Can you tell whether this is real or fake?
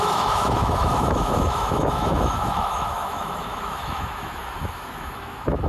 fake